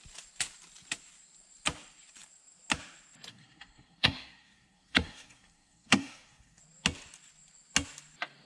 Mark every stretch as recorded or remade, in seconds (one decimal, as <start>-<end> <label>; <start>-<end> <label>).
0.0-3.3 recorded; 3.3-6.6 remade; 6.6-8.5 recorded